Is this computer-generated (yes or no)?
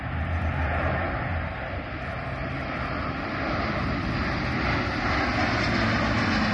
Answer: no